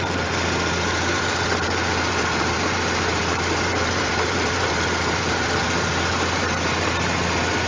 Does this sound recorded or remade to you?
remade